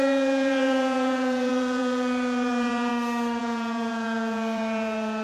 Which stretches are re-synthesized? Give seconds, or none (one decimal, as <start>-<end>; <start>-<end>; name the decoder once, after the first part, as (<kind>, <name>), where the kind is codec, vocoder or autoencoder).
0.0-2.9 (vocoder, Vocos); 3.4-5.2